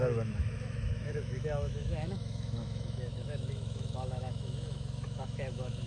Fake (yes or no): yes